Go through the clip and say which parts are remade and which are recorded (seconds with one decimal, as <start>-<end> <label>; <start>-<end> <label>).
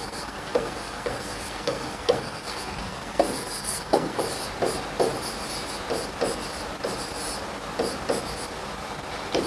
0.0-4.2 remade; 4.2-9.5 recorded